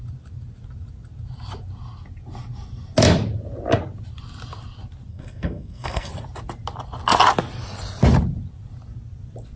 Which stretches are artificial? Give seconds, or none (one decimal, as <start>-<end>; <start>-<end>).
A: 5.1-6.1